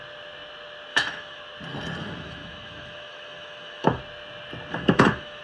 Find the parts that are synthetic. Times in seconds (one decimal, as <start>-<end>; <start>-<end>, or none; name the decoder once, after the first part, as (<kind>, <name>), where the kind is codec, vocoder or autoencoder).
0.9-1.4 (autoencoder, DAC-VAE); 2.0-4.0; 4.7-5.4